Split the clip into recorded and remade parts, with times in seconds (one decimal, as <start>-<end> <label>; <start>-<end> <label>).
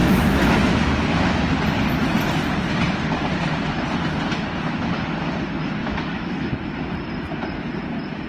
0.0-1.5 remade; 1.5-5.8 recorded; 5.8-6.5 remade; 6.5-8.3 recorded